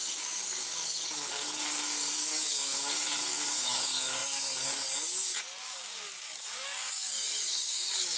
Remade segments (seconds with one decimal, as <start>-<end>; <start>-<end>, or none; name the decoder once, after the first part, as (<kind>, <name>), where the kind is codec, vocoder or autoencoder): 0.0-8.2 (codec, DAC)